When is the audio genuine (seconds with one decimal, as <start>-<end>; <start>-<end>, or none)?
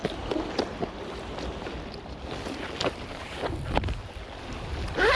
0.0-5.2